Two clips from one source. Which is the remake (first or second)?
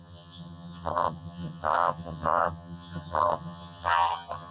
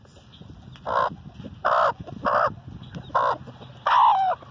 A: first